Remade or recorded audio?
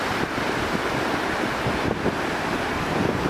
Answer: remade